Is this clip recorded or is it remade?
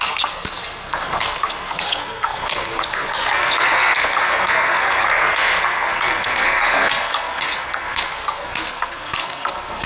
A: remade